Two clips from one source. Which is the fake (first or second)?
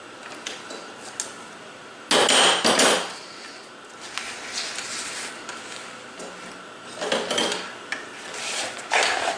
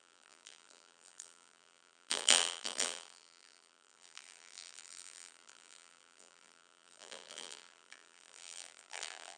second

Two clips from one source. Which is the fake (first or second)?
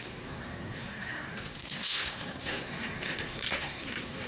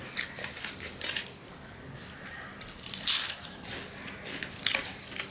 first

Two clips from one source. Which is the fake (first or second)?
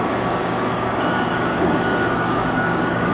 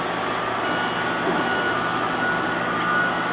first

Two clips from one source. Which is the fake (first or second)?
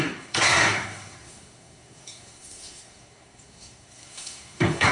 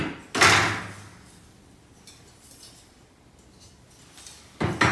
first